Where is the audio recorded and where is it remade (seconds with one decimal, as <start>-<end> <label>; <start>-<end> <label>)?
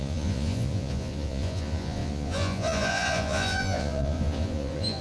0.0-5.0 remade